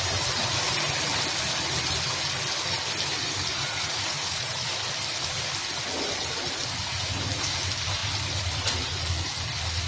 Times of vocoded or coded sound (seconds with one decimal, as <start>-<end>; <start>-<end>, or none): 3.5-4.5